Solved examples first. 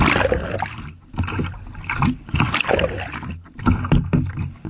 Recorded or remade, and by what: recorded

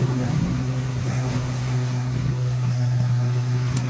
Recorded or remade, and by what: remade, codec, SNAC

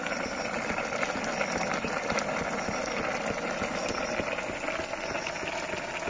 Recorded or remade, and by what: recorded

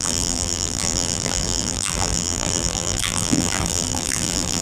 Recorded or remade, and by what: remade, vocoder, BigVGAN v2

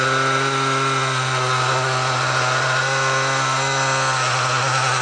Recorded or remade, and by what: recorded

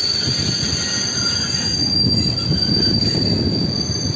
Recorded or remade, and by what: recorded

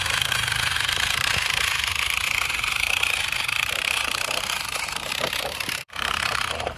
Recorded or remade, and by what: remade, vocoder, BigVGAN v2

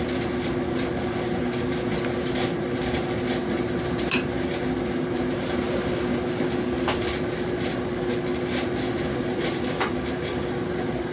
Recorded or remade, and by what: recorded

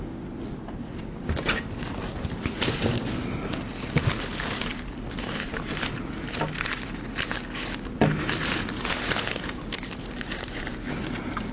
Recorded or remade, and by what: recorded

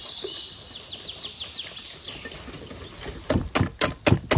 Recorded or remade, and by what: recorded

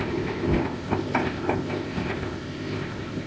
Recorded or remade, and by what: remade, codec, ZipCodec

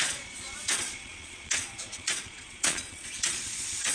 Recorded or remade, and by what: remade, vocoder, Vocos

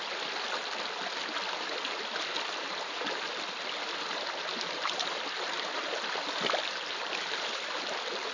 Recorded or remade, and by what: recorded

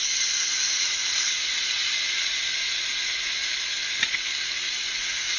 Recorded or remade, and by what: recorded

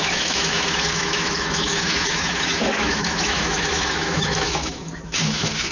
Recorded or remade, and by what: remade, autoencoder, DAC-VAE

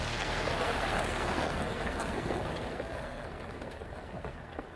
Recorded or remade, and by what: remade, codec, SNAC